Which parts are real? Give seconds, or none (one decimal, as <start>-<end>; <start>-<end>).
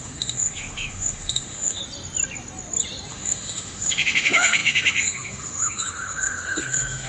1.8-3.1